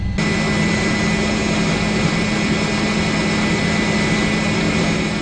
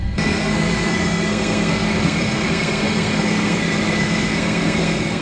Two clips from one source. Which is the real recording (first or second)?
first